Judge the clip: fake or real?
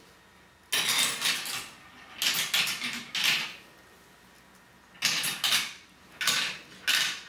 real